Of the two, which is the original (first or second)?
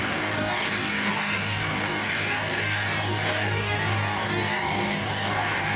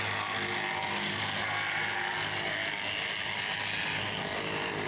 second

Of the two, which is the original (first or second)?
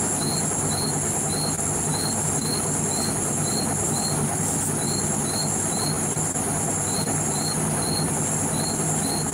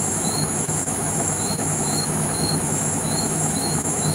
first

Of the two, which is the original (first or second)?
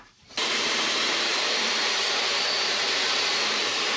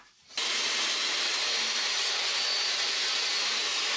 second